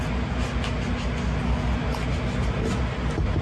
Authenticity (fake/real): real